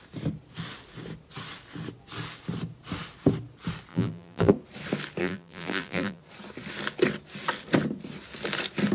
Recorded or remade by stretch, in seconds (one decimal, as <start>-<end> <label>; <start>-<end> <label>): 0.0-3.9 recorded; 3.9-4.5 remade; 4.5-5.2 recorded; 5.2-6.2 remade; 6.2-8.9 recorded